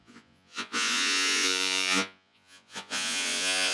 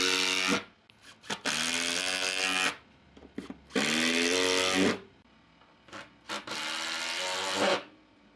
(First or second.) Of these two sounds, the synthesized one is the first